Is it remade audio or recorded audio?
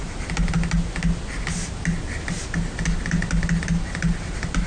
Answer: recorded